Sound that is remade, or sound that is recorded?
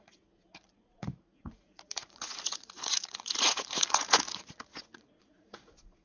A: remade